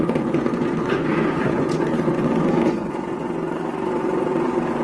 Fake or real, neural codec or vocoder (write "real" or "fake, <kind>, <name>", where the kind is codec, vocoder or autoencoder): fake, vocoder, Vocos